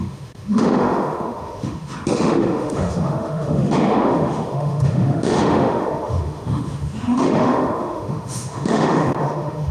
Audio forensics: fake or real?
fake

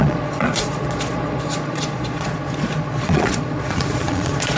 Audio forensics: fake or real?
fake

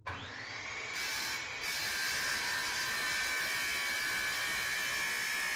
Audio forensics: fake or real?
real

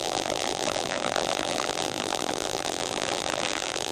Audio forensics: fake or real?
fake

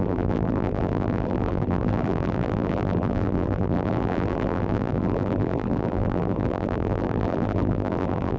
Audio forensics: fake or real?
fake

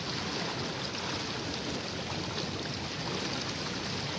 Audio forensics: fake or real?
real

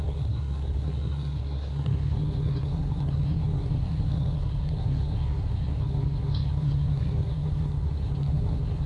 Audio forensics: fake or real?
fake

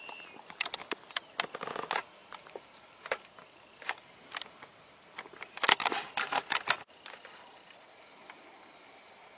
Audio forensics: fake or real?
real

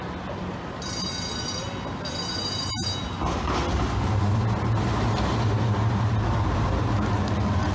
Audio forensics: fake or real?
real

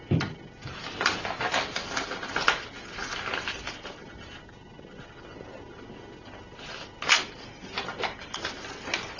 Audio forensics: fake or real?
real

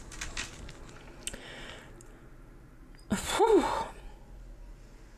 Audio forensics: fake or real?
real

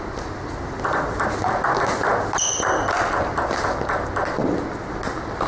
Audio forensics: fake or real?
real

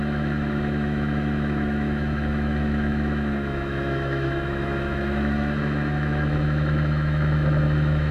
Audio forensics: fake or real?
fake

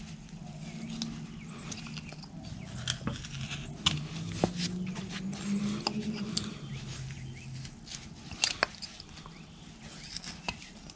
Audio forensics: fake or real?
real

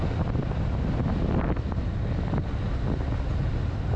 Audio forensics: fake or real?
real